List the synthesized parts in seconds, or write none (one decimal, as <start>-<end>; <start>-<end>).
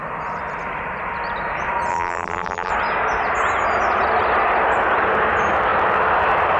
1.9-2.7